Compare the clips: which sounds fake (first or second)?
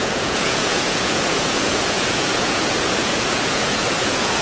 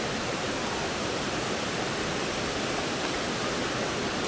first